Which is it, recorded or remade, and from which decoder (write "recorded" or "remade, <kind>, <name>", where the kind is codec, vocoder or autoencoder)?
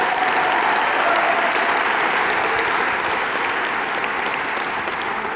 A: recorded